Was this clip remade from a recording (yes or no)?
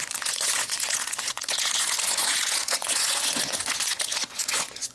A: yes